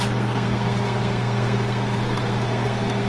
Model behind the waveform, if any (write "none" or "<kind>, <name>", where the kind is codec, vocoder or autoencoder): codec, SNAC